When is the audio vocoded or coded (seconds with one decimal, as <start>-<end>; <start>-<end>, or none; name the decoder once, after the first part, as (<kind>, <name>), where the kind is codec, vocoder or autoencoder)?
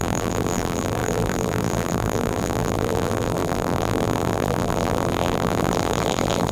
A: 0.0-6.5 (vocoder, BigVGAN v2)